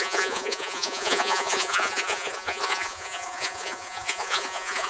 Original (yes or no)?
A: no